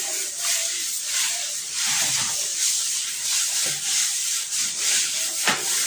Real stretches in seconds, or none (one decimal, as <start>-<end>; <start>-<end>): none